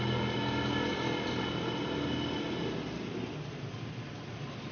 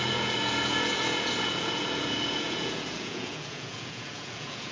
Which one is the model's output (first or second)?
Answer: second